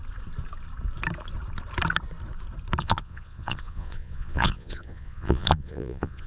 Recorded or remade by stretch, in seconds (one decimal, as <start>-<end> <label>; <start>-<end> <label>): 0.0-2.8 recorded; 2.8-6.3 remade